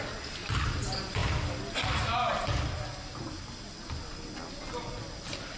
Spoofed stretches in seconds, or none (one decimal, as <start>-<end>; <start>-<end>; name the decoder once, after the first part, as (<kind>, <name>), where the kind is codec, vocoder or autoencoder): none